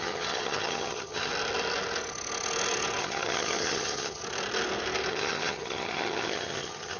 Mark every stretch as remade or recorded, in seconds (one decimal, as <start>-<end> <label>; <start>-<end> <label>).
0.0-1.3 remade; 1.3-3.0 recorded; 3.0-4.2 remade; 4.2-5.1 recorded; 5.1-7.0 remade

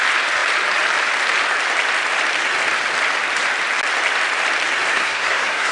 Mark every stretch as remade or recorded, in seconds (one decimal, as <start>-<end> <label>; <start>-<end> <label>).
0.0-4.9 recorded; 4.9-5.7 remade

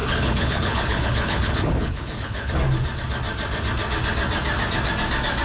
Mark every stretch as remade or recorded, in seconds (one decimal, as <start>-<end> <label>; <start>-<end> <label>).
0.0-2.5 remade; 2.5-5.4 recorded

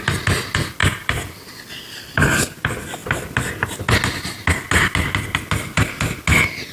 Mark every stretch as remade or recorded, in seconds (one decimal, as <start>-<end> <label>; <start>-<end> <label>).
0.0-0.8 recorded; 0.8-1.6 remade; 1.6-6.7 recorded

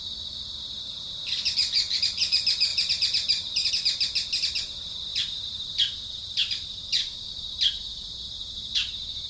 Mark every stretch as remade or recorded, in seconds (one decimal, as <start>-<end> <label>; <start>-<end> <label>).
0.0-2.7 recorded; 2.7-3.7 remade; 3.7-5.1 recorded; 5.1-8.9 remade; 8.9-9.3 recorded

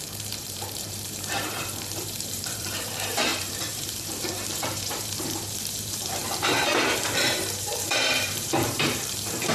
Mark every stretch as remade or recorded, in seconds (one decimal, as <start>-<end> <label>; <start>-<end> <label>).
0.0-9.5 remade

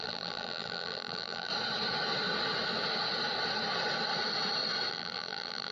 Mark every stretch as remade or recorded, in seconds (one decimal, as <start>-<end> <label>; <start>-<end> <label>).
0.0-1.5 remade; 1.5-4.9 recorded; 4.9-5.7 remade